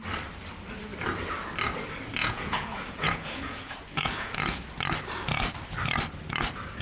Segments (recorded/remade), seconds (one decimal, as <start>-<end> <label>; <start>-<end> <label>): 0.0-2.2 recorded; 2.2-4.6 remade; 4.6-6.8 recorded